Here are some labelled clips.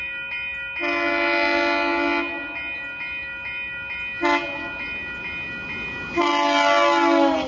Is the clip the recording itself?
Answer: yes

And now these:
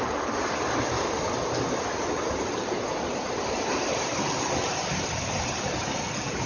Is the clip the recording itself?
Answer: yes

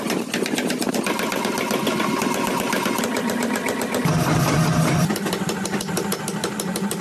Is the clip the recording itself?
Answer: yes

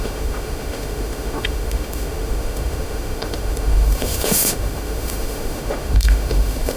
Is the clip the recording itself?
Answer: no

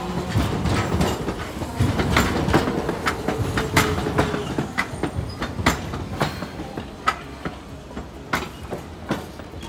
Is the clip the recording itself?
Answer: yes